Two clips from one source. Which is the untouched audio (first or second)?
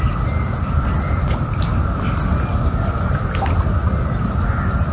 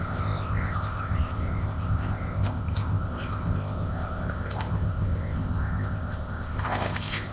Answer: first